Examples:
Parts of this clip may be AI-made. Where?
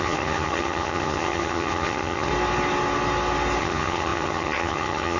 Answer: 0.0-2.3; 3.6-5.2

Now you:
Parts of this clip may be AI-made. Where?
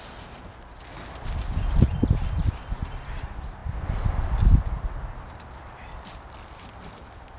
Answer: none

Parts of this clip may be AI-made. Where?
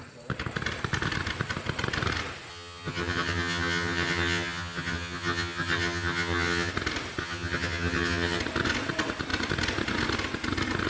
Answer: 2.5-6.7; 7.2-8.4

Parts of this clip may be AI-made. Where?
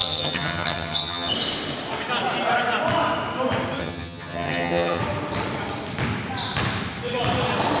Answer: 0.0-1.3; 3.8-5.0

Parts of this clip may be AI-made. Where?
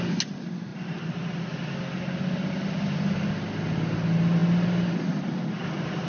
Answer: none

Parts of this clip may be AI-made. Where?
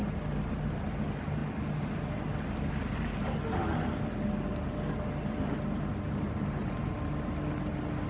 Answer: none